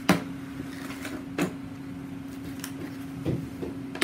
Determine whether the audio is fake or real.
real